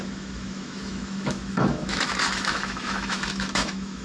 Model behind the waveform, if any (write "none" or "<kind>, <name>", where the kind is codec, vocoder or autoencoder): autoencoder, DAC-VAE